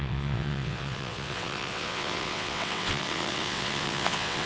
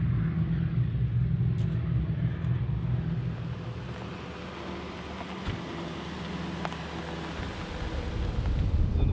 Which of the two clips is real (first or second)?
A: second